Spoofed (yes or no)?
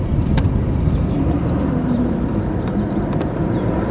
yes